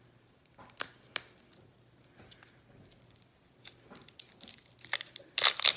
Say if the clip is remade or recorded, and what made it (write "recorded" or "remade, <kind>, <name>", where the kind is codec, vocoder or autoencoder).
recorded